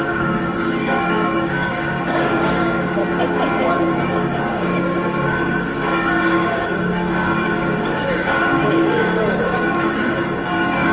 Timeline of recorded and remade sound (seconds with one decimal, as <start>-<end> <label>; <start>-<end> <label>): 0.0-3.0 remade; 3.0-3.8 recorded; 3.8-10.9 remade